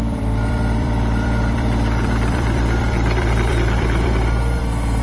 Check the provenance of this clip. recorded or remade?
remade